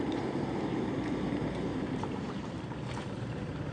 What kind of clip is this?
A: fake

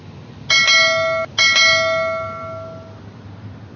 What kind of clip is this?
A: real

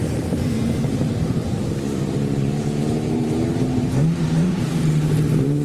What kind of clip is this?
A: fake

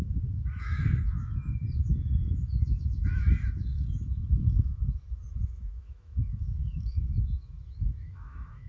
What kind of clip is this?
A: fake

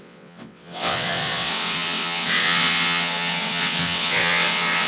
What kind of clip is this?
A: fake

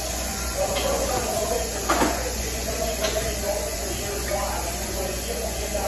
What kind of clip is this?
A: fake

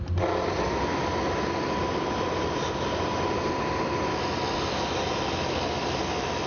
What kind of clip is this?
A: real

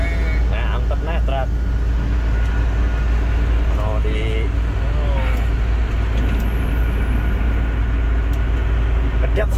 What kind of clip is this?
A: real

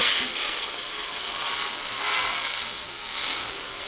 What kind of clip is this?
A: fake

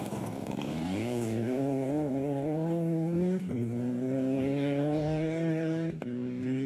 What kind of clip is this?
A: fake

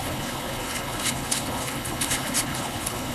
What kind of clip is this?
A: fake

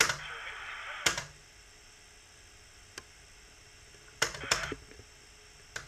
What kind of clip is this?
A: real